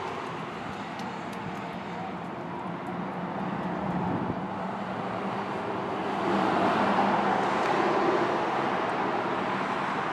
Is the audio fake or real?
real